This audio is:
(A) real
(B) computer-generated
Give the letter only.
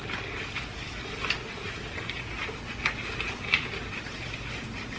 A